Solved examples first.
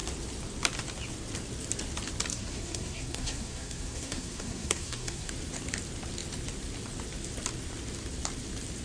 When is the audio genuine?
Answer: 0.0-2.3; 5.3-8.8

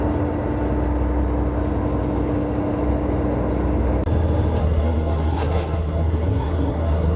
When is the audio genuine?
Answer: 0.0-4.6

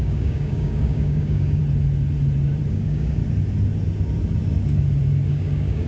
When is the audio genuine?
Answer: 1.6-2.7; 3.2-5.3